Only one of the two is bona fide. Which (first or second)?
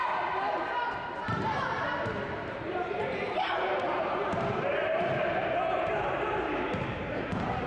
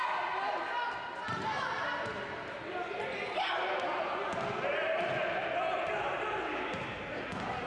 second